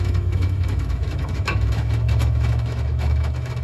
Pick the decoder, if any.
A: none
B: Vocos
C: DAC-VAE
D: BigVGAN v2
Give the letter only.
C